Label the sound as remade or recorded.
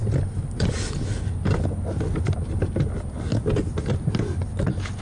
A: recorded